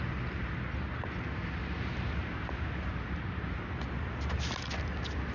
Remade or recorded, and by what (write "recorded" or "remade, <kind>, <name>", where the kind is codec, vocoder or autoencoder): recorded